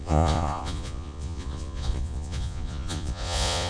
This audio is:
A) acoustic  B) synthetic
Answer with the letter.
B